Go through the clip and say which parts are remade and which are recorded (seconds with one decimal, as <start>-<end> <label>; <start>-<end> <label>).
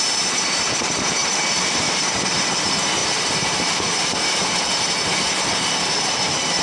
0.0-1.2 recorded; 1.2-2.5 remade; 2.5-3.0 recorded; 3.0-4.6 remade; 4.6-6.6 recorded